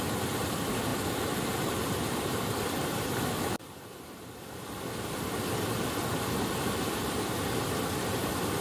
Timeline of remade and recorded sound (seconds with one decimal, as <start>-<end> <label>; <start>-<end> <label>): 0.0-8.6 recorded